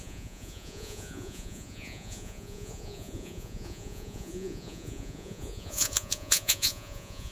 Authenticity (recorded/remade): remade